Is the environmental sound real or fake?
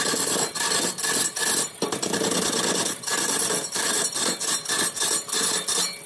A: real